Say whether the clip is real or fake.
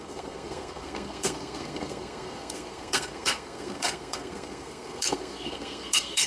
fake